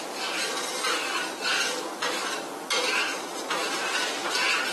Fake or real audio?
fake